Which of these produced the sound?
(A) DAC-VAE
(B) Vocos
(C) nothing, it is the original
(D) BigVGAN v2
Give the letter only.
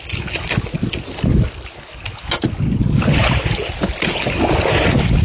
C